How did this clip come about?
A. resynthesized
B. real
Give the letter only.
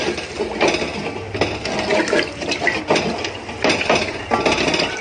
B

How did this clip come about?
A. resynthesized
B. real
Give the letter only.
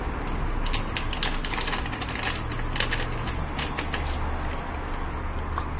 B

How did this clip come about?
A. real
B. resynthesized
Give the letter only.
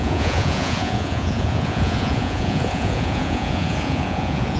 B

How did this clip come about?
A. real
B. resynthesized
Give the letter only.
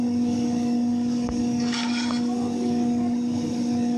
B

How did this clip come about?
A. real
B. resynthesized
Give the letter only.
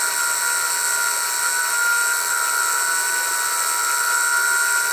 A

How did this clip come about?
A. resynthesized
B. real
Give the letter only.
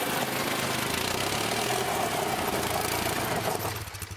B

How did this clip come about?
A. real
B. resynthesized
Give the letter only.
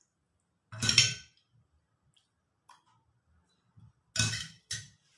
A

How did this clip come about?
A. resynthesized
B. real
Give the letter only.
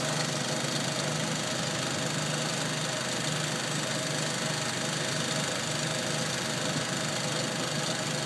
B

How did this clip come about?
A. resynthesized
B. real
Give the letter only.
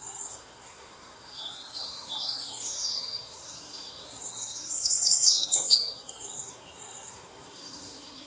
A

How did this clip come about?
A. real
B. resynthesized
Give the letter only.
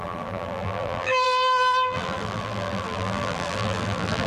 B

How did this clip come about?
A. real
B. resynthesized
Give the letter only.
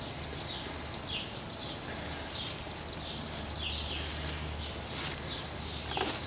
A